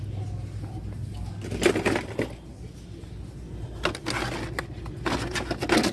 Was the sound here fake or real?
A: real